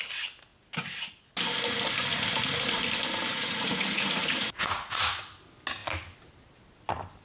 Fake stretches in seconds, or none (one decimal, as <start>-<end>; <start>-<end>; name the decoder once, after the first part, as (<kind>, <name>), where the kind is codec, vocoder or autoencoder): 3.3-5.2 (vocoder, Vocos)

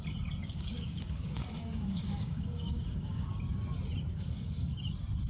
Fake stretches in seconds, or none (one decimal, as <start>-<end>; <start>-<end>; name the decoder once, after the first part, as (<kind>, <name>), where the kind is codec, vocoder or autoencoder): 0.4-3.6 (codec, DAC); 4.1-4.8

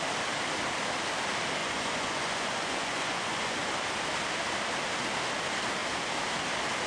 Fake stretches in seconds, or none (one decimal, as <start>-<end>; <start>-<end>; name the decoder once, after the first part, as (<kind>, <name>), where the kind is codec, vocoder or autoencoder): 1.6-3.6 (vocoder, Vocos)

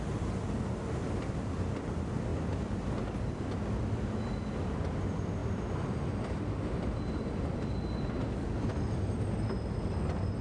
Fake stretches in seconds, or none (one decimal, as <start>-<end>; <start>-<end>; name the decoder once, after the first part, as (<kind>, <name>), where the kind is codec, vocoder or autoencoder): none

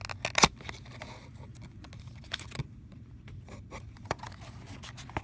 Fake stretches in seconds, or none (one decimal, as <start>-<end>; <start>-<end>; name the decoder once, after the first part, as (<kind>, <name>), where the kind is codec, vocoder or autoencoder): 2.6-4.3 (vocoder, BigVGAN v2)